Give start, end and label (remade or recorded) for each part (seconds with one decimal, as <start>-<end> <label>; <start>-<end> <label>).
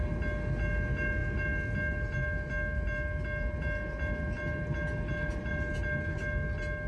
0.0-6.9 recorded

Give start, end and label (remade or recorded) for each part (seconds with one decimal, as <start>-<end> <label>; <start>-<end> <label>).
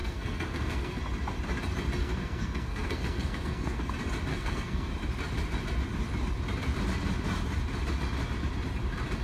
0.0-1.0 remade; 1.0-2.0 recorded; 2.0-3.9 remade; 3.9-4.3 recorded; 4.3-4.9 remade; 4.9-9.2 recorded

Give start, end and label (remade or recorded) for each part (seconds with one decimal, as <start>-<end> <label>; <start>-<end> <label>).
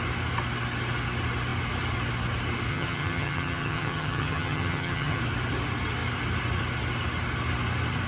0.0-2.7 recorded; 2.7-5.2 remade; 5.2-8.1 recorded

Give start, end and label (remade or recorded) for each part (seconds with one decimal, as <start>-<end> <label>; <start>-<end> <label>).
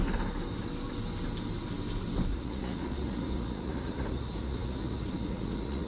0.0-2.3 recorded; 2.3-5.9 remade